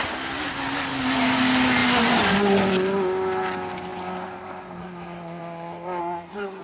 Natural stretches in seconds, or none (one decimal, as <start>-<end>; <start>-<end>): 0.0-6.0